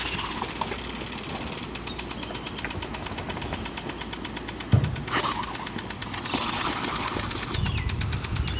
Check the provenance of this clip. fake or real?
real